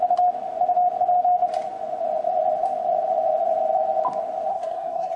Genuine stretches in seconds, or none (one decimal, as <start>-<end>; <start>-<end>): 0.0-4.5